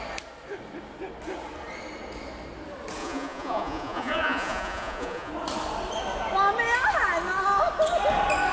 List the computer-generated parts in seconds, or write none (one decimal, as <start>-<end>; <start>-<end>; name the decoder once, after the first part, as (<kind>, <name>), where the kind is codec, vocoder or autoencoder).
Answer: 3.0-5.3 (vocoder, Vocos)